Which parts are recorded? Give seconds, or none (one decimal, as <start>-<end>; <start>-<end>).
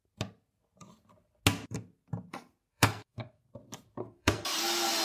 0.0-2.7; 3.4-4.0; 4.6-5.0